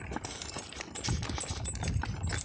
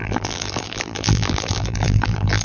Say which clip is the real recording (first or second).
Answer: first